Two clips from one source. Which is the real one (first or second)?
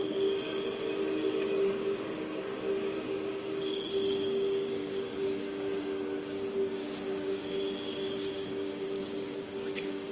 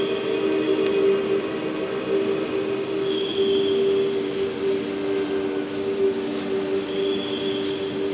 second